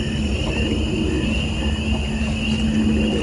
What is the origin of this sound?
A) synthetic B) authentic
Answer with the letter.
B